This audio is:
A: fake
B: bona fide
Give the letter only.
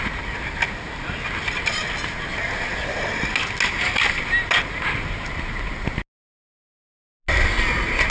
B